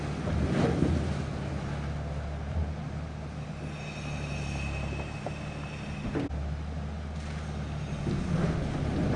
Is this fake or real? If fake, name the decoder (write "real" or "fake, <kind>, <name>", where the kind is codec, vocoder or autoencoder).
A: real